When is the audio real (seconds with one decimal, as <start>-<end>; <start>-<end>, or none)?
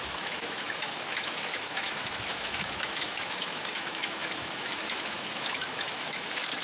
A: none